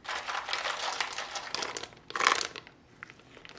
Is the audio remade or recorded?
recorded